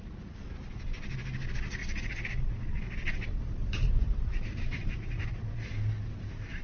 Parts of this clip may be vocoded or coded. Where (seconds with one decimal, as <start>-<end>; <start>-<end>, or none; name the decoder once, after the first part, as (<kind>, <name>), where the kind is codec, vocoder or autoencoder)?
3.6-5.3 (vocoder, BigVGAN v2)